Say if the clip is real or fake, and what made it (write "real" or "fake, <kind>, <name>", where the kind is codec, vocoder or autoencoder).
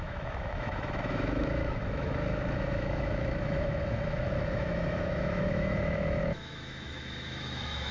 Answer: fake, autoencoder, DAC-VAE